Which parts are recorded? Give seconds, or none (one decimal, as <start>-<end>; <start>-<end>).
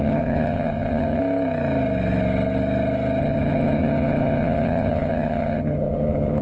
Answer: 1.2-3.2